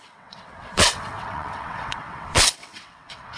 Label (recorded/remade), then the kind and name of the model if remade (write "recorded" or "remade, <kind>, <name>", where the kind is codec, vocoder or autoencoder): remade, vocoder, WaveNeXt